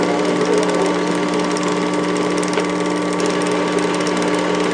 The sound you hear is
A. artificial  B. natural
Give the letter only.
B